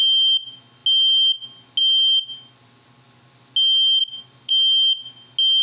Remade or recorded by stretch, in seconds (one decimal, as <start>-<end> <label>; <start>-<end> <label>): 0.0-5.6 recorded

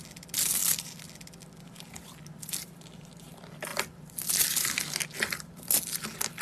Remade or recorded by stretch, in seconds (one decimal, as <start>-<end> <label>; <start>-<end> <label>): 0.0-6.4 recorded

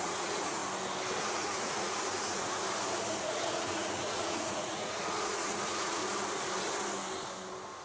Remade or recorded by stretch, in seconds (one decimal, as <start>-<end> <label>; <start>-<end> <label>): 0.0-0.6 remade; 0.6-1.3 recorded; 1.3-2.6 remade; 2.6-3.2 recorded; 3.2-6.0 remade; 6.0-7.8 recorded

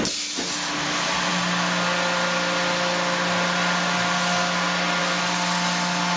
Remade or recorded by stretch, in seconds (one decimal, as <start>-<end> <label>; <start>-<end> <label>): 0.0-6.2 recorded

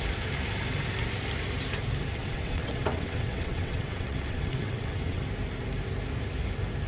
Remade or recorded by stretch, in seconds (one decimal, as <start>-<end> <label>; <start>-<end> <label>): 0.0-2.2 recorded; 2.2-5.2 remade; 5.2-6.9 recorded